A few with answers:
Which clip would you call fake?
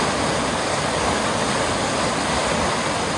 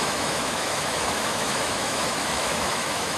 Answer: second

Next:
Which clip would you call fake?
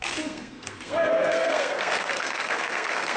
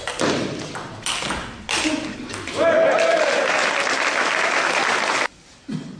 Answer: first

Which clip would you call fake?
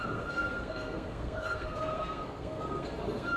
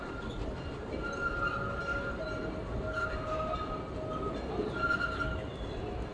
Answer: first